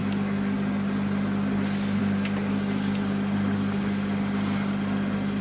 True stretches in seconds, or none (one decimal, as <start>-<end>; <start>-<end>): 0.0-5.4